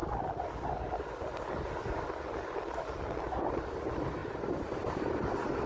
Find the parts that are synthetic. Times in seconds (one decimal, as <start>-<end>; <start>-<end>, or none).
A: none